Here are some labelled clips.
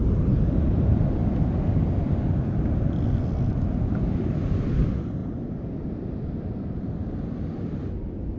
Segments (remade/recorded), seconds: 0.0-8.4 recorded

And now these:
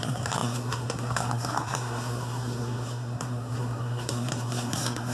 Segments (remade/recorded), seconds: 0.0-5.1 remade

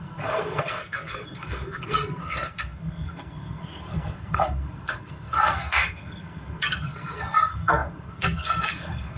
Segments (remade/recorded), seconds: 0.0-9.2 remade

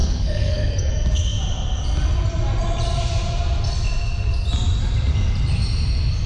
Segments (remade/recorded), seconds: 0.0-0.9 remade; 0.9-6.3 recorded

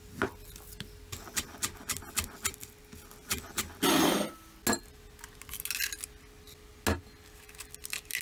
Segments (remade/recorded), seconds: 0.0-8.2 recorded

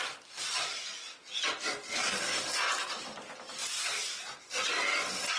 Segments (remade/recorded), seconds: 0.0-5.4 recorded